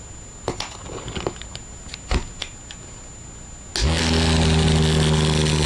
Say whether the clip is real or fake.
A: real